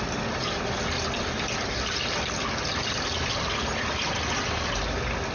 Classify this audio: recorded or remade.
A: recorded